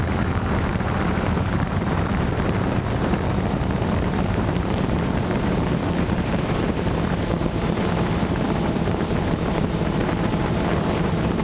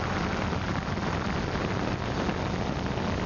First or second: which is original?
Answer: second